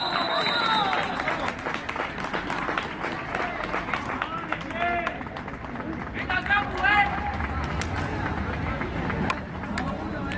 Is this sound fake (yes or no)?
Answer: no